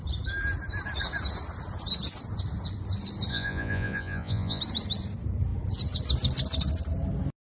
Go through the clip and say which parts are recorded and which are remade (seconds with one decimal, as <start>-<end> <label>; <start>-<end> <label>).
0.0-3.3 recorded; 3.3-4.6 remade; 4.6-7.4 recorded